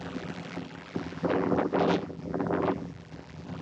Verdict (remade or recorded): remade